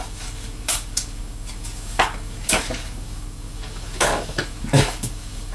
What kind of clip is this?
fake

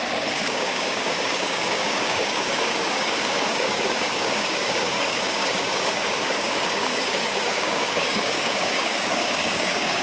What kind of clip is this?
fake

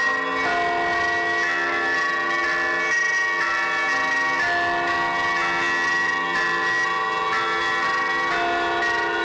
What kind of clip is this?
real